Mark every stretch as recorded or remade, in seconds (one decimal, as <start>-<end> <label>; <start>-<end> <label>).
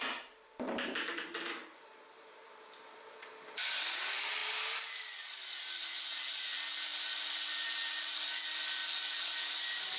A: 0.0-8.8 remade; 8.8-9.3 recorded; 9.3-10.0 remade